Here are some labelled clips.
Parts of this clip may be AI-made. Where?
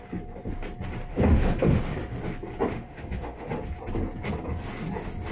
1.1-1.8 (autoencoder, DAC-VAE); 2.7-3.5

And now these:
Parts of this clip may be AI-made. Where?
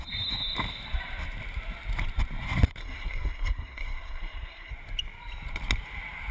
2.8-4.7 (codec, SNAC)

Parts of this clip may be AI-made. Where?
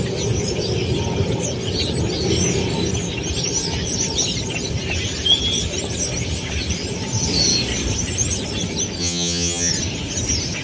9.0-9.7 (vocoder, HiFi-GAN)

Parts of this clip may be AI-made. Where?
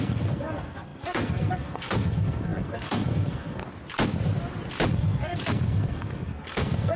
0.0-3.6 (codec, SNAC); 4.9-7.0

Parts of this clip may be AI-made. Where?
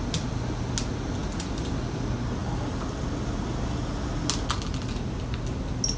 2.4-3.0 (vocoder, BigVGAN v2)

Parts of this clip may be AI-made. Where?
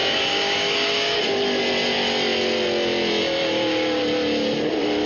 0.0-1.2 (codec, DAC); 3.2-4.0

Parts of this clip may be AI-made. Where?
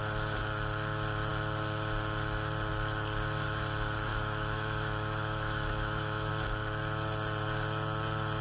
4.1-6.3 (autoencoder, DAC-VAE)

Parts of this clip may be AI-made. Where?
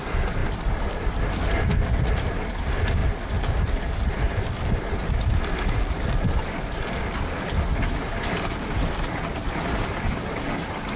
none